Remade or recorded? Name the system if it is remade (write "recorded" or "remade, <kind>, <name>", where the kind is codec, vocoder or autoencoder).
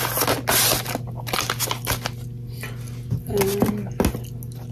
recorded